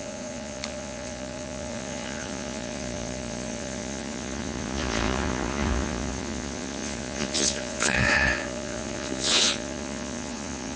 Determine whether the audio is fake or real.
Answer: fake